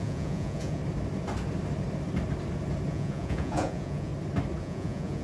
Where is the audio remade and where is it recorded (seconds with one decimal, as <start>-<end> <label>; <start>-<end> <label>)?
0.0-0.8 remade; 0.8-2.9 recorded; 2.9-4.1 remade; 4.1-4.6 recorded; 4.6-5.2 remade